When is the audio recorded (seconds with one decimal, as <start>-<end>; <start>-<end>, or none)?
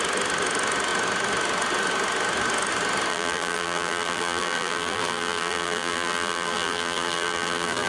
0.0-3.1